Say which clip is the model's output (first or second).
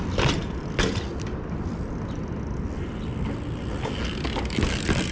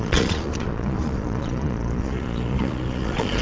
second